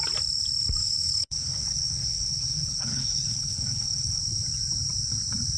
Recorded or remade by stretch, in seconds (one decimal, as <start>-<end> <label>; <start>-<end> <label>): 0.0-0.8 recorded; 0.8-4.2 remade; 4.2-5.6 recorded